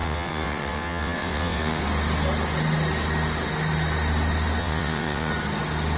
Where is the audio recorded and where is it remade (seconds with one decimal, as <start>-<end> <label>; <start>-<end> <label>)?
0.0-1.8 remade; 1.8-4.6 recorded; 4.6-5.3 remade; 5.3-6.0 recorded